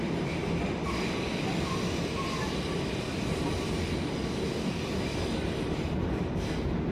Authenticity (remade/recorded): recorded